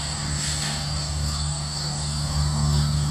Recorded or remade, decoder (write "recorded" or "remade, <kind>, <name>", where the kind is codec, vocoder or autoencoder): remade, codec, DAC